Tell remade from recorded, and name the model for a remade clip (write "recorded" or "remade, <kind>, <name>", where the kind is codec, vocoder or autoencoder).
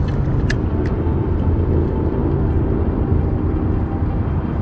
recorded